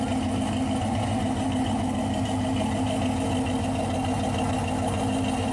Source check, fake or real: real